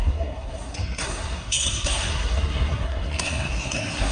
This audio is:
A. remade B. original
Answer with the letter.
A